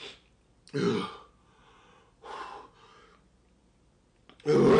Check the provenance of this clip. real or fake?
real